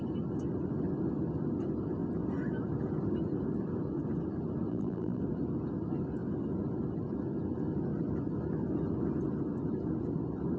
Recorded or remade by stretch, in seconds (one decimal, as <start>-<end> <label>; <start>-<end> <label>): 0.0-4.7 recorded; 4.7-5.2 remade; 5.2-10.6 recorded